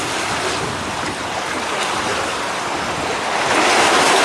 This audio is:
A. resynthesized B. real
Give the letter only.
B